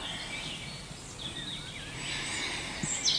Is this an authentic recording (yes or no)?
yes